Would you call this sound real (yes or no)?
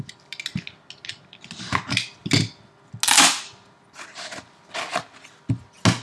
yes